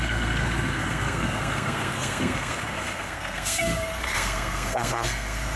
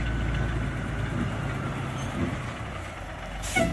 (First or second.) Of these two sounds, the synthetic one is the first